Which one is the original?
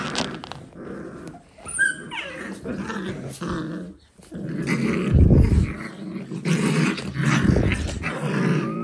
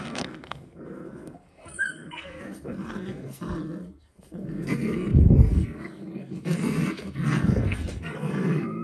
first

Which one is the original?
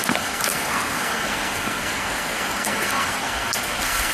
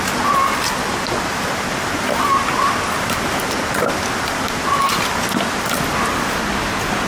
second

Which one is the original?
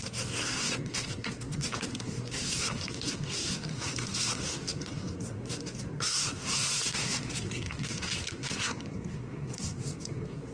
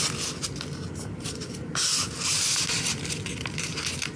second